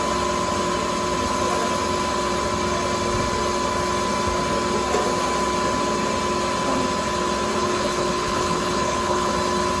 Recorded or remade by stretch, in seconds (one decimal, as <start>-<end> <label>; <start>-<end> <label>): 0.0-7.5 recorded; 7.5-9.3 remade; 9.3-9.8 recorded